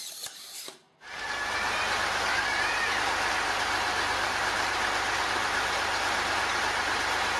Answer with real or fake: fake